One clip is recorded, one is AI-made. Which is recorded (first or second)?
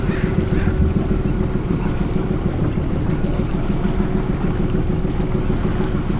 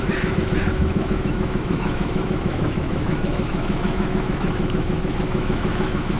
first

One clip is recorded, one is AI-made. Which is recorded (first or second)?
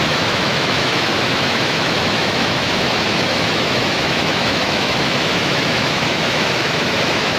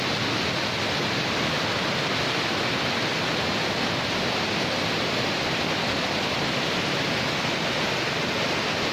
second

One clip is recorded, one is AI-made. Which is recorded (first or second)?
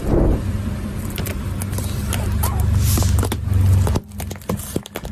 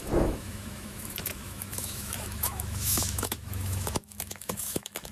first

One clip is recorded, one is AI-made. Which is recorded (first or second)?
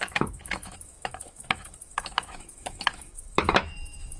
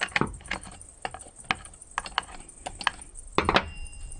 second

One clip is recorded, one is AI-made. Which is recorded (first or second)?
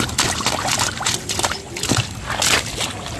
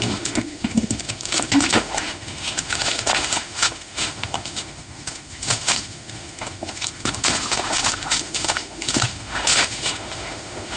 first